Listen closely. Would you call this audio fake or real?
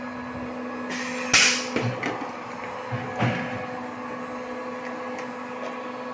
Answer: real